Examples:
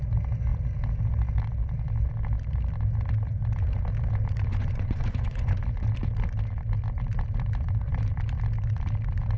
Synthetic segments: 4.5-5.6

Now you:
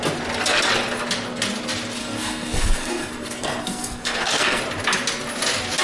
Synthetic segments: 2.0-4.6

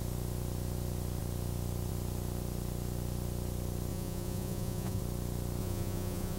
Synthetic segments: 3.9-5.0; 5.6-6.4

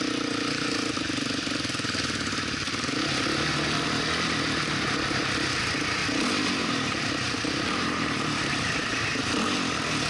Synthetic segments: 6.0-9.2

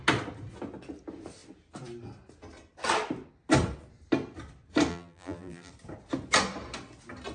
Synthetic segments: 4.9-5.7

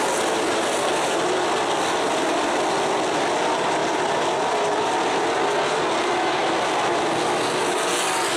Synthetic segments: none

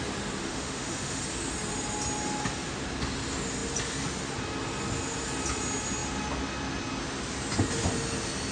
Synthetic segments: 0.4-1.2

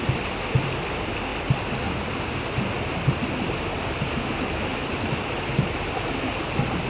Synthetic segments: none